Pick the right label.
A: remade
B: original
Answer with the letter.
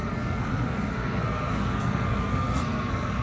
A